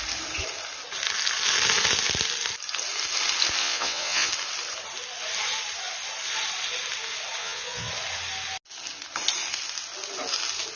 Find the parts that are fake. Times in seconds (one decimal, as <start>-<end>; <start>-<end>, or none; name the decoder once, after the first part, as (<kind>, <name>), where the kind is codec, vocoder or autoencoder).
3.6-4.3 (vocoder, WaveNeXt); 7.4-7.9